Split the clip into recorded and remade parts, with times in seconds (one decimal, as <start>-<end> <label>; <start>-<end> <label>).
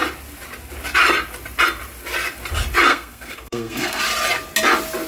0.0-2.9 recorded; 2.9-4.0 remade; 4.0-5.1 recorded